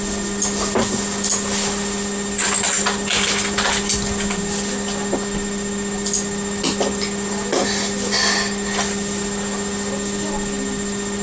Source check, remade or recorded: recorded